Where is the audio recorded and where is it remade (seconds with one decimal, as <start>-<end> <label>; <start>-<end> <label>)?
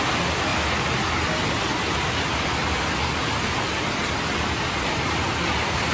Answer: 0.0-5.9 recorded